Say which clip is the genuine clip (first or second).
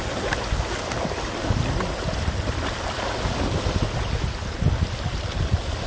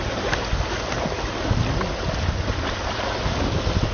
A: second